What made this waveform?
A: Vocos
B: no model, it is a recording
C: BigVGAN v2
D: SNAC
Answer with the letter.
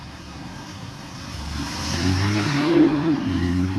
D